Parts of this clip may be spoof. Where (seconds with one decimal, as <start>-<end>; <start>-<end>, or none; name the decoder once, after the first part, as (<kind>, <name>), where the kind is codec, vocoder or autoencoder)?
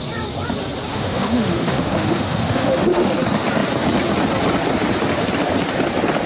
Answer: 0.9-3.1 (autoencoder, DAC-VAE)